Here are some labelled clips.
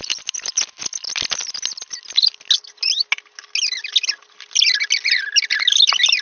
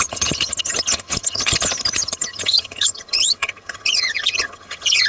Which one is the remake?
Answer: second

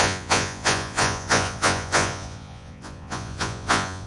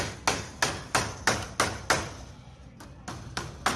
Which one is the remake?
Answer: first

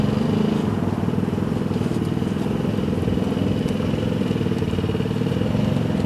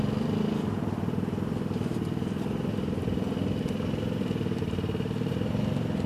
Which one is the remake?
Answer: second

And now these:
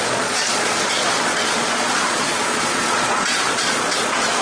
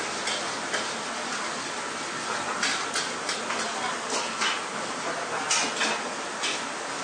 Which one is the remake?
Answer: first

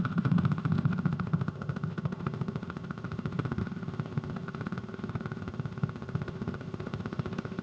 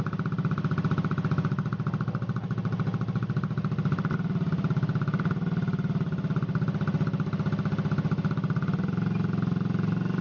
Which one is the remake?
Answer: first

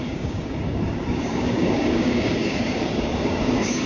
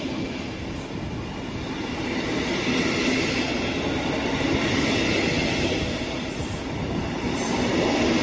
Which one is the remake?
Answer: first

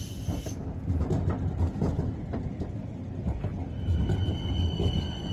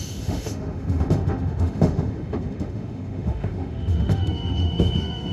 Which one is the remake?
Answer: second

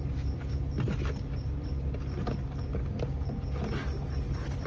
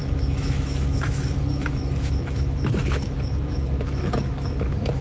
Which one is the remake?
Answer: second